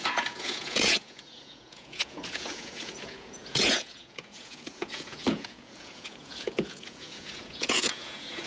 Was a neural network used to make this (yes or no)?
yes